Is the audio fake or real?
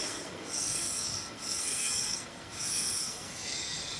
fake